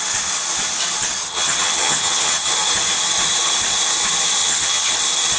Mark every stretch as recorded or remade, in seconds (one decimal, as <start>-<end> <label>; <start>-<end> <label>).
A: 0.0-1.2 recorded; 1.2-2.5 remade; 2.5-4.4 recorded; 4.4-4.9 remade; 4.9-5.4 recorded